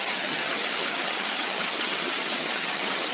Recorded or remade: remade